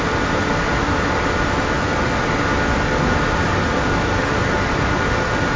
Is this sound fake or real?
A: real